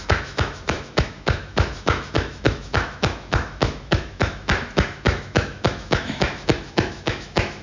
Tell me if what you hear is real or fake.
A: fake